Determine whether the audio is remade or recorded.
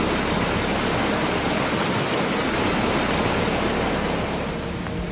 recorded